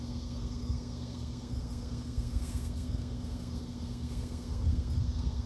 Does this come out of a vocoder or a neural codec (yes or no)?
yes